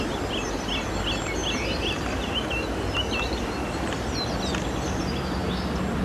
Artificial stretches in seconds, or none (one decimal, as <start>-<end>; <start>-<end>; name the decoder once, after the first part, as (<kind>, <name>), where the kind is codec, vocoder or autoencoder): none